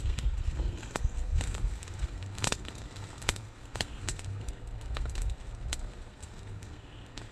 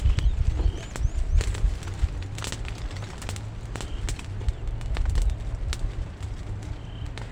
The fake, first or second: first